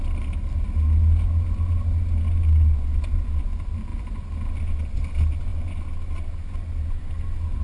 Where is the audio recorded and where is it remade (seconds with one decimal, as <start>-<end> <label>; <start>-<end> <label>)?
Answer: 0.0-7.6 recorded